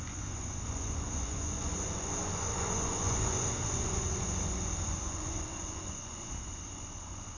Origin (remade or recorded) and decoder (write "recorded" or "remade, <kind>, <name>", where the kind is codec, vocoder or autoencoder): remade, vocoder, Vocos